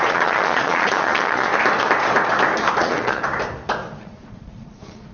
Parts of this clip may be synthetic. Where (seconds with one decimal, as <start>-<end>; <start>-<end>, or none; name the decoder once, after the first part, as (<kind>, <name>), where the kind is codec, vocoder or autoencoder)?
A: 0.0-1.5 (vocoder, Vocos); 2.8-3.2; 4.0-5.1